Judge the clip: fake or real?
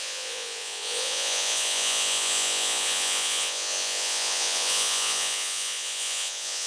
fake